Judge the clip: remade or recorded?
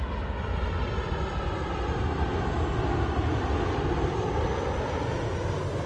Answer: recorded